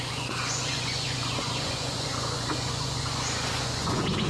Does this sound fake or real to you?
fake